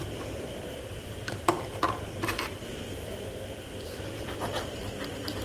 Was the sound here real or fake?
fake